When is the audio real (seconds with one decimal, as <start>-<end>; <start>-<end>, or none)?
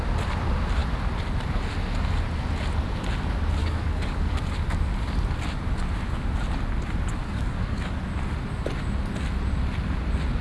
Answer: 0.0-3.6; 4.4-7.2; 8.0-10.4